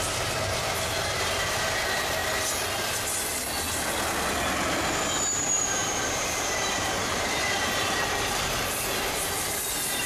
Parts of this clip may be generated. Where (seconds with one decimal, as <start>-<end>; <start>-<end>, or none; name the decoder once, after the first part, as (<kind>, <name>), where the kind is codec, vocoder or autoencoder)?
0.0-2.2 (vocoder, BigVGAN v2); 5.3-10.1